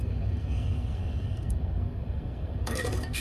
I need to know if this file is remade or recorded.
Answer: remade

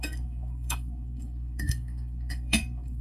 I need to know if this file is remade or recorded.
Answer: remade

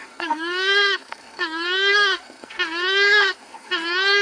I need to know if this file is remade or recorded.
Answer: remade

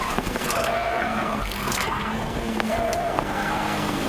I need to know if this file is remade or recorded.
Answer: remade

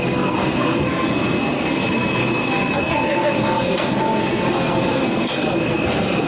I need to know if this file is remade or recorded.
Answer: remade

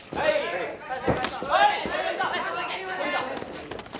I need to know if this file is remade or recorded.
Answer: recorded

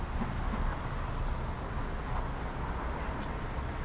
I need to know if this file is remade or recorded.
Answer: recorded